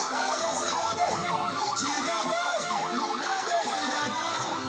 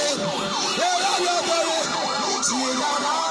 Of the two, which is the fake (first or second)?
first